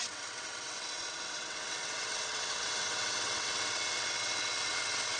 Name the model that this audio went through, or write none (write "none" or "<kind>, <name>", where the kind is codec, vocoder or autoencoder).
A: vocoder, WaveNeXt